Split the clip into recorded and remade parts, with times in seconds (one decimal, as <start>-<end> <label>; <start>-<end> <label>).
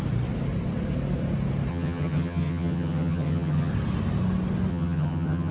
0.0-1.7 recorded; 1.7-3.7 remade; 3.7-4.7 recorded; 4.7-5.5 remade